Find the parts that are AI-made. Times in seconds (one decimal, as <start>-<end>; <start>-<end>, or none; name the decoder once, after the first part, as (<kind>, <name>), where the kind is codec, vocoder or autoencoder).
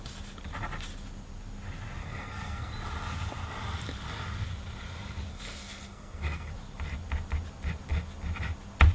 2.0-2.7 (codec, SNAC); 5.3-6.5